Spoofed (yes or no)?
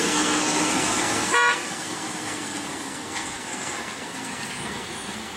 yes